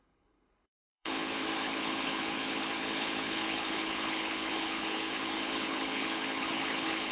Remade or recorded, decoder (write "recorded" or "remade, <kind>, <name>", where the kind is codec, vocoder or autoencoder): remade, codec, HILCodec